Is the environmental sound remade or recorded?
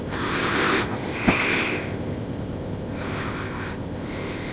remade